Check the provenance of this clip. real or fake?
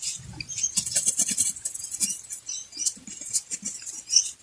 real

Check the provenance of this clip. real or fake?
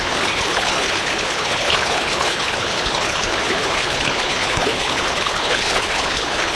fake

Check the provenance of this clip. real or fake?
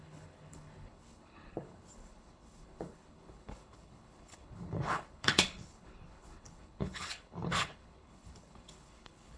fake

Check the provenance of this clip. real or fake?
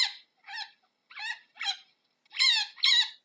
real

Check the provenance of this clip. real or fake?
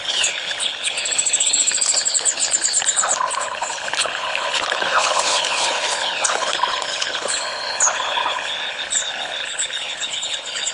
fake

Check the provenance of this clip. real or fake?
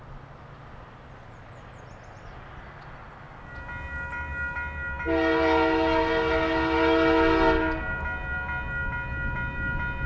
real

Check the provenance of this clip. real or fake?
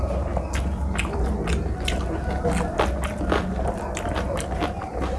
real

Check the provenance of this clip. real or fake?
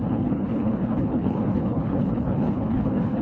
fake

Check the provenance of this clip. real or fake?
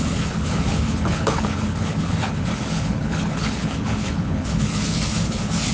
fake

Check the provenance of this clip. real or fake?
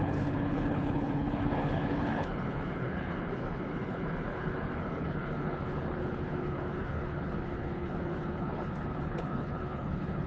fake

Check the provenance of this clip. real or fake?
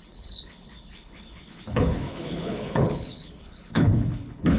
fake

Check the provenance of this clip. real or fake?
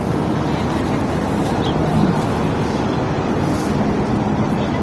real